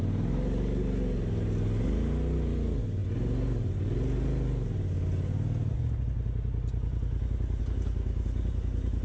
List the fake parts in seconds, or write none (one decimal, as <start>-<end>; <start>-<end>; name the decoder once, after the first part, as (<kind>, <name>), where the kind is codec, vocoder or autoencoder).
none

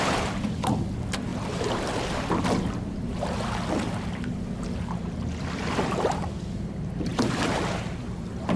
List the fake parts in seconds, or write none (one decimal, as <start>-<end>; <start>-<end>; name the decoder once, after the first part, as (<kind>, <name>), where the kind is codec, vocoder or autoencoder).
none

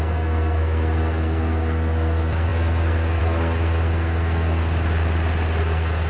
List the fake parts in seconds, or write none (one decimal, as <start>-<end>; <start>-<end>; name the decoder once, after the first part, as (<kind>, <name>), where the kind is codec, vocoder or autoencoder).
0.0-4.6 (codec, SNAC); 5.6-6.1

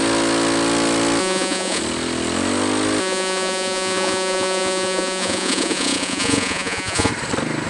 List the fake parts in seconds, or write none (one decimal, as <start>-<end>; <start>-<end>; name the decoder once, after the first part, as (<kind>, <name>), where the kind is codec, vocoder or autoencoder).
1.2-1.8 (vocoder, Vocos); 3.0-7.1

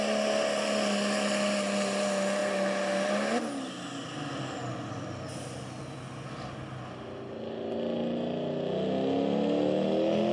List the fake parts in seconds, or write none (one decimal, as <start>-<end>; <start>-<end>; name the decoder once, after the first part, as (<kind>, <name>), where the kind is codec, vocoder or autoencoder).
none

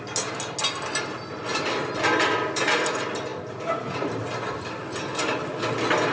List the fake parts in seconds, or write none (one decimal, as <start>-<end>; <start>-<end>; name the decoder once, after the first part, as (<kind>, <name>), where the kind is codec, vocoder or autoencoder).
1.8-2.7 (vocoder, BigVGAN v2); 3.3-4.2